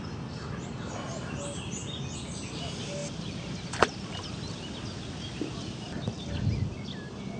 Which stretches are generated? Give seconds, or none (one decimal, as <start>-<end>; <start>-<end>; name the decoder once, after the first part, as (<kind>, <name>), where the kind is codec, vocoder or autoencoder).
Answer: none